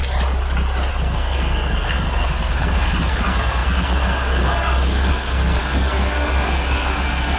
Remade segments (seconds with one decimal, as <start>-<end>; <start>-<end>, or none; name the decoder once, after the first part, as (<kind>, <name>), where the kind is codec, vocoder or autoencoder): 0.9-7.4 (codec, SNAC)